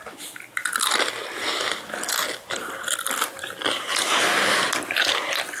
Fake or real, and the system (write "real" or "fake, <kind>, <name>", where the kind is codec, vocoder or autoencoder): real